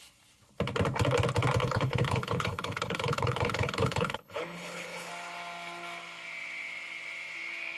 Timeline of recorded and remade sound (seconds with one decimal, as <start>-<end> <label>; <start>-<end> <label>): 0.0-1.6 recorded; 1.6-5.1 remade; 5.1-7.8 recorded